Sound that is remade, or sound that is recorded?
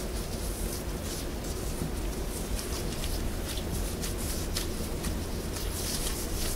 remade